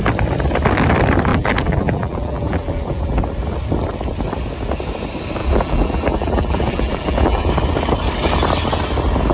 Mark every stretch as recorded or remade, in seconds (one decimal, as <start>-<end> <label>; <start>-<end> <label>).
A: 0.0-1.3 recorded; 1.3-3.2 remade; 3.2-5.4 recorded; 5.4-7.5 remade; 7.5-9.3 recorded